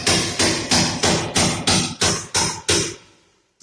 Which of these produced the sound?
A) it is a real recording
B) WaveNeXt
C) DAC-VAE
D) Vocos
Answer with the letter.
A